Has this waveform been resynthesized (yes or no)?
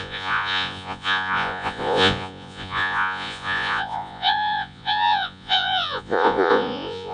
yes